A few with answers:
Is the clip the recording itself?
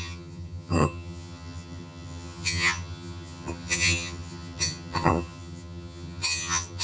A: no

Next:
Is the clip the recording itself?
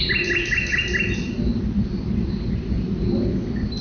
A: yes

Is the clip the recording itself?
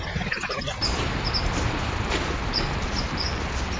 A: yes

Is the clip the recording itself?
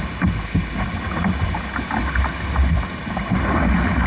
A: yes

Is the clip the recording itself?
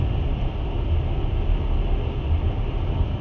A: yes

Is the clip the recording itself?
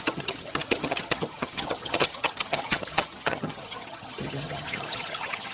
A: no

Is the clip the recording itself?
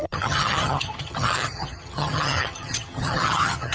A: no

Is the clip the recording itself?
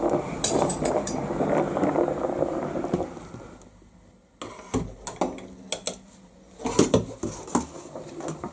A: yes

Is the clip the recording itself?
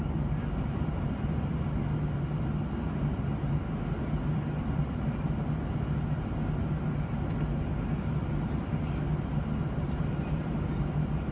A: yes